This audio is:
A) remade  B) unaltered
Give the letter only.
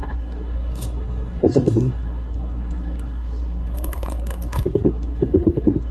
A